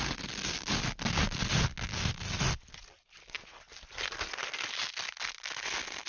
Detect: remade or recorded recorded